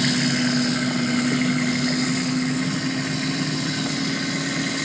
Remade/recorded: recorded